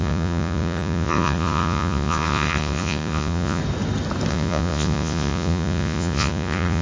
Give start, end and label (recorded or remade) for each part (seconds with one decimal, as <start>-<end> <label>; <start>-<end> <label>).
0.0-3.6 remade; 3.6-4.3 recorded; 4.3-6.8 remade